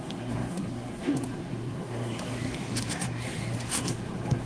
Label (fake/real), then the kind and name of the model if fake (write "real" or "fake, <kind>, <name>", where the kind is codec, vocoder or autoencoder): fake, codec, SNAC